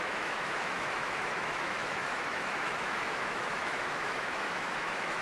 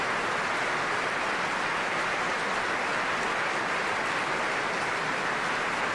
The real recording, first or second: second